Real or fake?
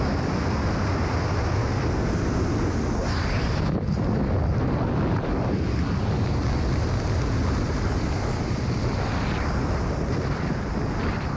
real